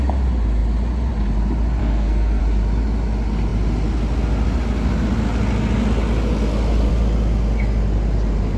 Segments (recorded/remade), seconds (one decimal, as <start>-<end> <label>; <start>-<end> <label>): 0.0-1.8 recorded; 1.8-2.4 remade; 2.4-8.6 recorded